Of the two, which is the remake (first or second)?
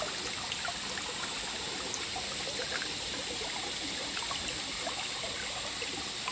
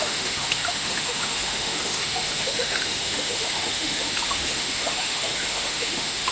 second